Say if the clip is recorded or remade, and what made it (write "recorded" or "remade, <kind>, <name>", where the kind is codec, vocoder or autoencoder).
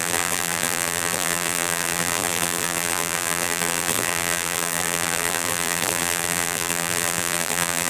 remade, vocoder, BigVGAN v2